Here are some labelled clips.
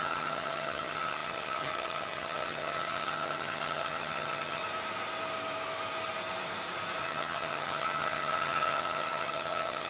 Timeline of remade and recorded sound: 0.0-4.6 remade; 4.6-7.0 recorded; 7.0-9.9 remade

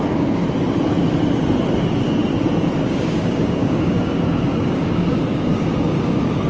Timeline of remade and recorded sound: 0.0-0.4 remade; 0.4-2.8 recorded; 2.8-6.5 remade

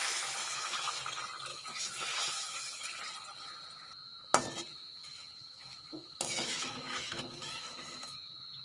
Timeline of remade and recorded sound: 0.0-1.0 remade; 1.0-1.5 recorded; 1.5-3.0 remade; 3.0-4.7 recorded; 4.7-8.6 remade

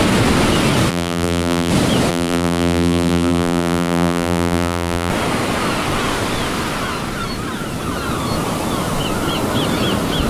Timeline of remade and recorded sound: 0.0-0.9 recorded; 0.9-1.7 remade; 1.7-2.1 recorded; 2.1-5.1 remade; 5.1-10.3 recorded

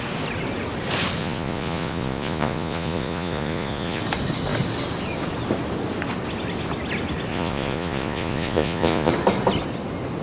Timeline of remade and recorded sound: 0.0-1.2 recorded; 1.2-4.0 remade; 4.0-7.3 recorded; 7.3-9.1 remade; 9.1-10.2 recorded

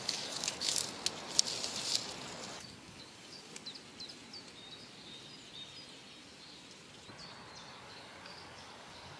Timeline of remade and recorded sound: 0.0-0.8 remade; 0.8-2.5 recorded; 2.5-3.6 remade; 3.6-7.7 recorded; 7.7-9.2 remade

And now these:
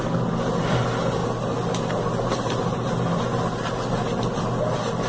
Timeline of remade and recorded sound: 0.0-5.1 recorded

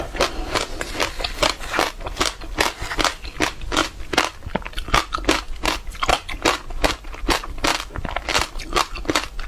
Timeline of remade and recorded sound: 0.0-7.7 recorded; 7.7-8.8 remade; 8.8-9.5 recorded